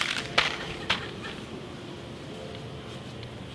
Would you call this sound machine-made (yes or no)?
no